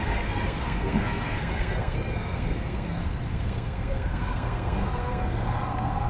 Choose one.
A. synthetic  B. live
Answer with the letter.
A